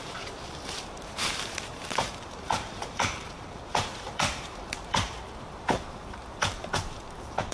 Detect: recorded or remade remade